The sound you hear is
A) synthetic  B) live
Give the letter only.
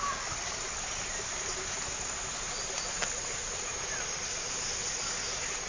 B